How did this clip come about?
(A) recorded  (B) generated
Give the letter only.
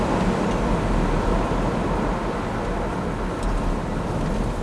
A